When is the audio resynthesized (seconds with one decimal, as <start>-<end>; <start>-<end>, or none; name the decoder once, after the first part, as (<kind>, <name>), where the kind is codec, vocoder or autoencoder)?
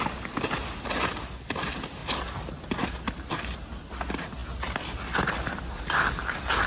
2.0-2.5 (vocoder, BigVGAN v2)